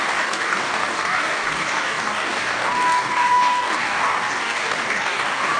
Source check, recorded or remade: remade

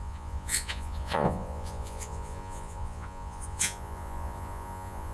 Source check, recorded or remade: remade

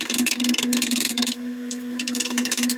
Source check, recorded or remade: remade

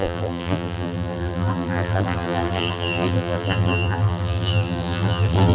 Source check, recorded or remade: remade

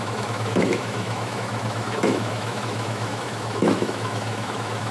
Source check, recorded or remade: remade